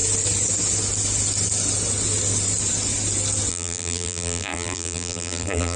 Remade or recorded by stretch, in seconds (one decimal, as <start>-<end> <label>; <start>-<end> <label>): 0.0-3.5 recorded; 3.5-5.8 remade